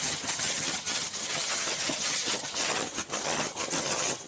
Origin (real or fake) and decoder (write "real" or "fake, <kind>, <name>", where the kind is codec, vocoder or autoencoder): fake, vocoder, HiFi-GAN